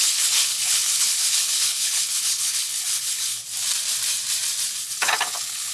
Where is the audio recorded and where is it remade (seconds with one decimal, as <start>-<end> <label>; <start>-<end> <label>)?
0.0-3.4 remade; 3.4-4.8 recorded; 4.8-5.7 remade